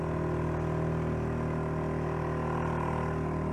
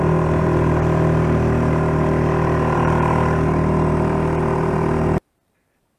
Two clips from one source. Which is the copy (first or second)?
second